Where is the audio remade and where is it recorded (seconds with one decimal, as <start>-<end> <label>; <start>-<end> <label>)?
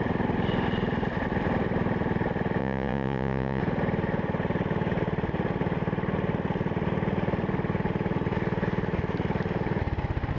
0.0-2.6 recorded; 2.6-3.6 remade; 3.6-10.4 recorded